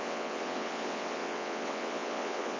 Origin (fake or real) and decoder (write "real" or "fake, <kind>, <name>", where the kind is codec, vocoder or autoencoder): fake, vocoder, WaveNeXt